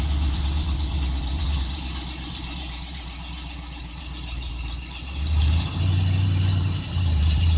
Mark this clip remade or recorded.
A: remade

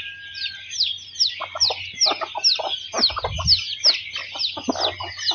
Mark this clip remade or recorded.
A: recorded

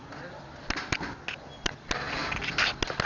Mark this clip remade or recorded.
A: recorded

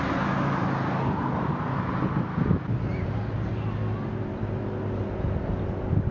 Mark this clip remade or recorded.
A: recorded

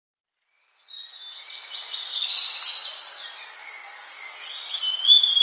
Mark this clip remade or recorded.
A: recorded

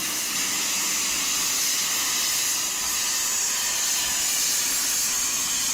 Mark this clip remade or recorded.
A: recorded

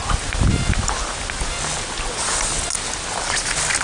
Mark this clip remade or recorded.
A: recorded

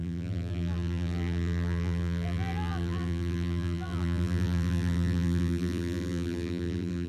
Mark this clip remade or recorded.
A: remade